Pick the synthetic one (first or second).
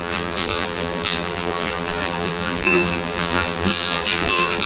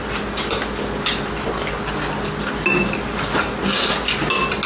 first